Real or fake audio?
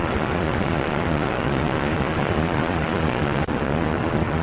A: fake